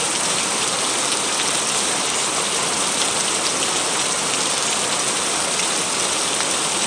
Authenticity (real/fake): fake